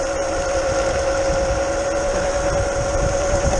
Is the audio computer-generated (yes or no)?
no